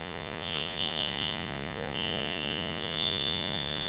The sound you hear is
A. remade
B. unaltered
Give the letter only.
A